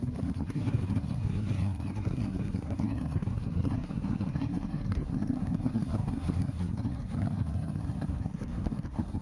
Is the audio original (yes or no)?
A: no